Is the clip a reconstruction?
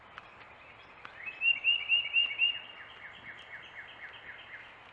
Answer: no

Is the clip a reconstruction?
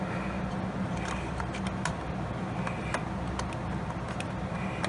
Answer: no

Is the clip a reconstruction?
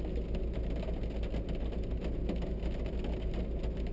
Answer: no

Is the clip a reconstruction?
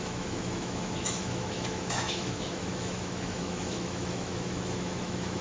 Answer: yes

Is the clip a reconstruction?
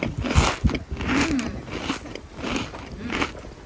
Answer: no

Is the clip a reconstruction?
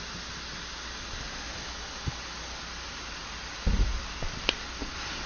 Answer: no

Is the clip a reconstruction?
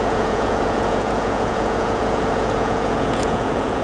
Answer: yes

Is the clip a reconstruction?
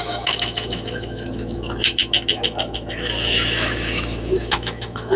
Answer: yes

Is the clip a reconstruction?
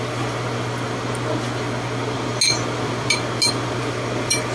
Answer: no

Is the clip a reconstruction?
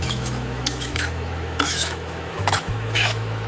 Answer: yes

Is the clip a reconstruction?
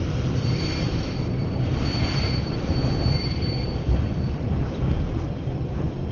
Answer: yes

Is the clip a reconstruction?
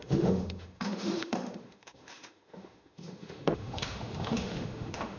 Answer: yes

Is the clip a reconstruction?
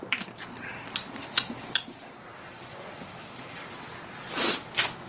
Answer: no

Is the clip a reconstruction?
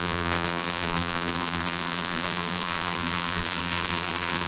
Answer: yes